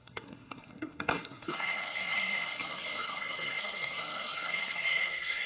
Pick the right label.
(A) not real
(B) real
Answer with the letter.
A